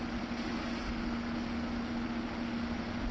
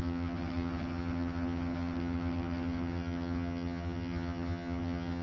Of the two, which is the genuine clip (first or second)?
first